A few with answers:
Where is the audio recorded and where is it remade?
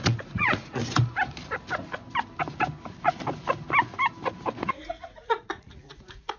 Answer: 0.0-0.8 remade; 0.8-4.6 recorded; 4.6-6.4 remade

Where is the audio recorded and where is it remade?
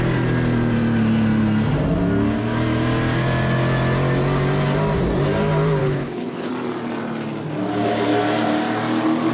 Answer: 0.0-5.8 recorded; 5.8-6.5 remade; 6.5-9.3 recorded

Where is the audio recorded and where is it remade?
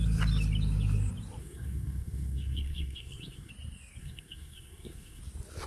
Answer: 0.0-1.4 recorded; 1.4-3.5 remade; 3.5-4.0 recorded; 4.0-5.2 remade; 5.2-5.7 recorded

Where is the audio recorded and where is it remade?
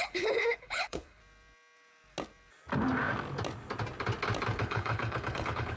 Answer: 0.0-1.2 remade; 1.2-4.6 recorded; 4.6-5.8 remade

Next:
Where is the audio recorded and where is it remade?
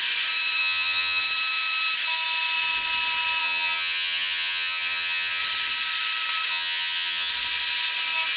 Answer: 0.0-0.6 recorded; 0.6-1.2 remade; 1.2-3.4 recorded; 3.4-5.4 remade; 5.4-6.5 recorded; 6.5-7.3 remade; 7.3-8.4 recorded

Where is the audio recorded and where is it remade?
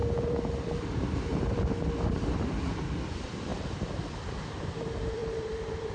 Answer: 0.0-3.5 remade; 3.5-4.2 recorded; 4.2-5.9 remade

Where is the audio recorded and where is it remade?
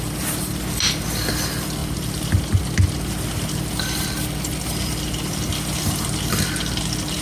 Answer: 0.0-7.2 recorded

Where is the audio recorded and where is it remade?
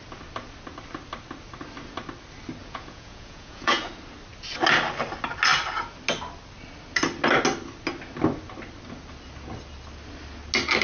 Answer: 0.0-2.6 recorded; 2.6-3.9 remade; 3.9-10.8 recorded